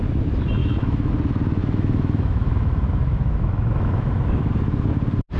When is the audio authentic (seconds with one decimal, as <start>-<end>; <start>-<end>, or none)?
0.0-0.6; 1.1-1.6; 4.5-5.4